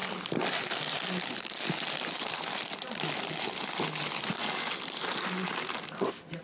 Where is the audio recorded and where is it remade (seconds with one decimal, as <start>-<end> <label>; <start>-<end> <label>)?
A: 0.0-6.4 recorded